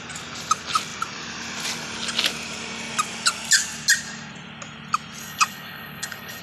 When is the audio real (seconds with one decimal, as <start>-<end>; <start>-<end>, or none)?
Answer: 0.0-5.2

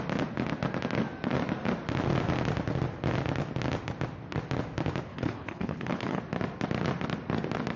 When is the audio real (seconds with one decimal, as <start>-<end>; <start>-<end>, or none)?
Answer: 0.0-5.1; 6.2-7.8

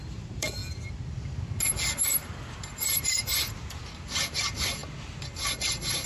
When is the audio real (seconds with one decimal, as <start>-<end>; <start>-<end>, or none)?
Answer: 0.6-1.6

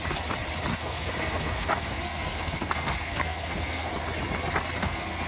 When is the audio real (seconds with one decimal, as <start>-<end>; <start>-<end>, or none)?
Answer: 0.0-0.7; 3.9-4.8